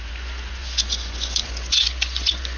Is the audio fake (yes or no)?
yes